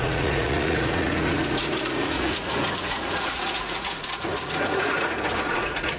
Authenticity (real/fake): fake